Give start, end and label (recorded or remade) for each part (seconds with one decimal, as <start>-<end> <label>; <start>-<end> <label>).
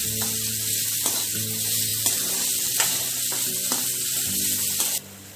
0.0-5.4 recorded